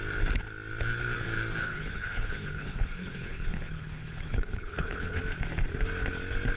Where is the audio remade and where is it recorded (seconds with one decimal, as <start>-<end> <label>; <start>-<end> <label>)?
0.0-1.6 recorded; 1.6-5.2 remade; 5.2-6.6 recorded